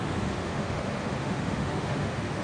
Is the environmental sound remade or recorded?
remade